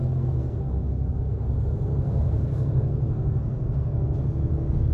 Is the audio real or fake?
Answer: fake